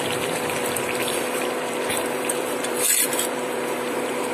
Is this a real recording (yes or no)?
no